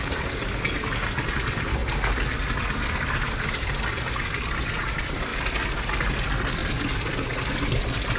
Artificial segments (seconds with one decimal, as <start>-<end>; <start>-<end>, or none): 1.8-4.1; 5.3-5.9; 6.6-8.2

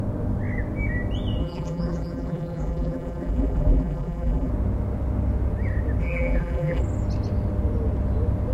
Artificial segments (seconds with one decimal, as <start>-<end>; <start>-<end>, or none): 1.4-4.5; 6.0-6.8

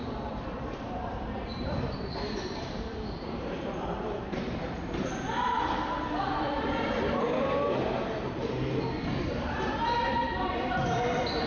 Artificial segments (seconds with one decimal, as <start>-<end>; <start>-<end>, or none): 0.0-11.5

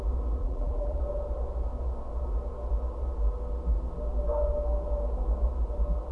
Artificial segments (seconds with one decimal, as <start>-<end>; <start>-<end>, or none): 0.4-1.0

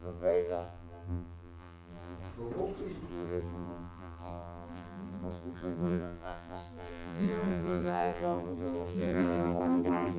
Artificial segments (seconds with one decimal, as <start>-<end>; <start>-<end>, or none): 0.0-2.3; 3.1-10.2

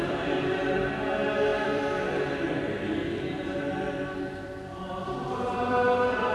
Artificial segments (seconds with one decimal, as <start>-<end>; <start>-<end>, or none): 0.0-6.3

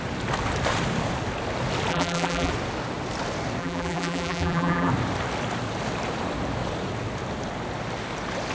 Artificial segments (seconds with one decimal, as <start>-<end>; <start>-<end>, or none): 1.9-2.5; 3.6-4.9

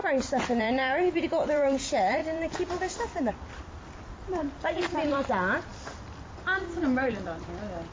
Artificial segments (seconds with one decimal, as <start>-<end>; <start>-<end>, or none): 0.0-5.7; 6.6-7.9